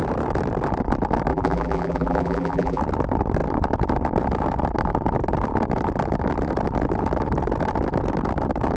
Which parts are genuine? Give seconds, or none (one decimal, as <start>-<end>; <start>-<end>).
0.0-1.3; 2.8-8.8